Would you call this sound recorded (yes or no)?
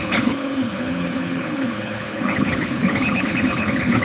no